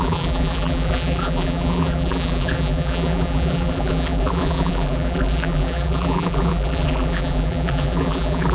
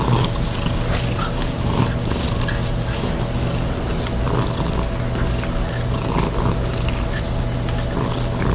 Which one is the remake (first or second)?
first